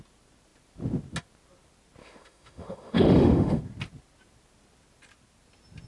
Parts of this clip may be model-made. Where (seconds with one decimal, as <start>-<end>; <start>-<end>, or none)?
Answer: 2.0-3.6